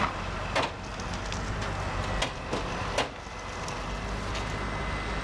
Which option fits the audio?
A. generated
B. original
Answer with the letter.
B